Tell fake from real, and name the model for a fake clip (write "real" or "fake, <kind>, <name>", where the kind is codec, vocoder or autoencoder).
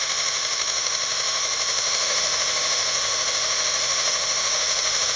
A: fake, autoencoder, DAC-VAE